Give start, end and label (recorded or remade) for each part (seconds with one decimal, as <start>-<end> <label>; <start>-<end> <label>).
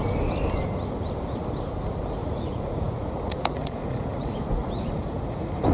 0.0-2.2 recorded; 2.2-5.7 remade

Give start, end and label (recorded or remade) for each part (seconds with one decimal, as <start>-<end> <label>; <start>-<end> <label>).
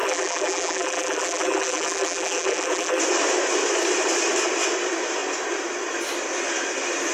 0.0-3.0 remade; 3.0-7.1 recorded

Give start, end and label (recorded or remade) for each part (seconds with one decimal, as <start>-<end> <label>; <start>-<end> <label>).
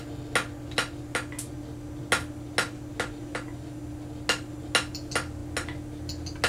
0.0-6.5 recorded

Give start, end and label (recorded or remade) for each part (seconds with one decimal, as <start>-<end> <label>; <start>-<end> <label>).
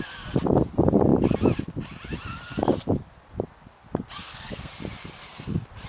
0.0-4.2 recorded; 4.2-4.7 remade; 4.7-5.9 recorded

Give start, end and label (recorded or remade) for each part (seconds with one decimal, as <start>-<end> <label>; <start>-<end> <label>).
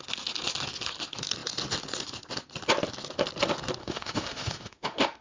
0.0-3.8 recorded; 3.8-5.2 remade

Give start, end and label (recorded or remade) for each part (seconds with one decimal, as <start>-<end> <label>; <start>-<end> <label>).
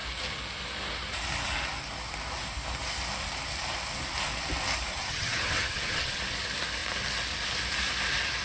0.0-4.9 recorded; 4.9-6.2 remade; 6.2-8.4 recorded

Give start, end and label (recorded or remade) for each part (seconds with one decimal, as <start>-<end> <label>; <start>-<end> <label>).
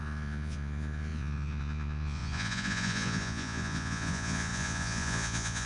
0.0-5.7 remade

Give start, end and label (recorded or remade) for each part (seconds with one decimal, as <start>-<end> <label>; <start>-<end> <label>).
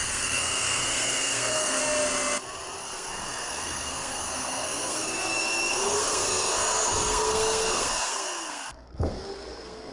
0.0-1.8 remade; 1.8-2.8 recorded; 2.8-9.9 remade